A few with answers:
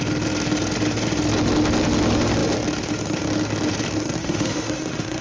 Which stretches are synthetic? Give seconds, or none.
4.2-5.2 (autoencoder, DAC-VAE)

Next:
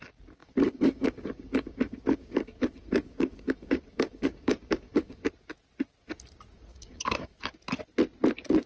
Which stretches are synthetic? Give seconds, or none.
0.4-5.3 (codec, DAC); 6.7-7.4

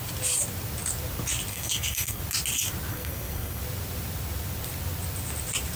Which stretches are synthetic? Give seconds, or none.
1.5-2.2 (codec, SNAC); 2.9-3.6

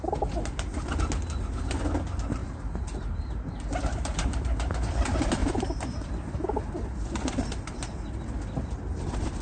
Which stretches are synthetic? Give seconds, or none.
2.4-4.4 (vocoder, BigVGAN v2); 5.4-6.2

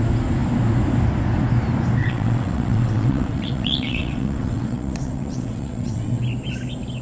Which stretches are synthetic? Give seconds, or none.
2.0-6.2 (vocoder, WaveNeXt)

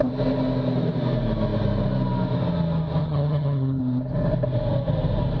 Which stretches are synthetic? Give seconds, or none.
3.0-3.8 (vocoder, HiFi-GAN)

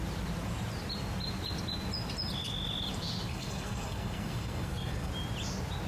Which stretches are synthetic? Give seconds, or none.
3.3-5.1 (codec, SNAC)